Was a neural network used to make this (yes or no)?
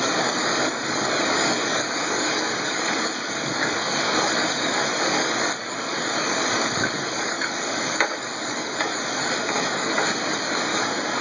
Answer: yes